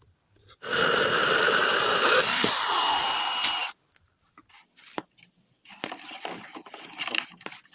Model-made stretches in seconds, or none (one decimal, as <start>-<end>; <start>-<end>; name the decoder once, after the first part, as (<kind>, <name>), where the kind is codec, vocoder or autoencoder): 0.0-7.7 (vocoder, BigVGAN v2)